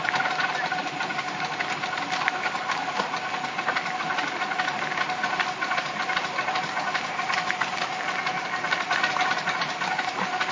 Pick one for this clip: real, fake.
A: real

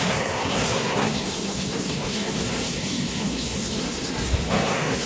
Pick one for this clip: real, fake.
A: fake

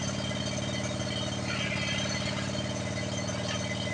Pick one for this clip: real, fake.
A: real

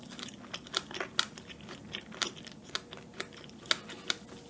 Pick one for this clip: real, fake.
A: real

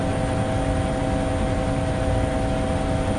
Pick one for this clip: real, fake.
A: real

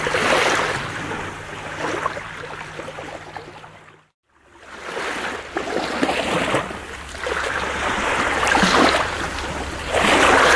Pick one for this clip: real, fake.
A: real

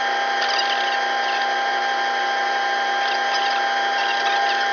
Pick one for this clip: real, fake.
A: real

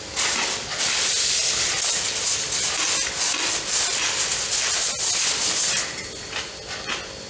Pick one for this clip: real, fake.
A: real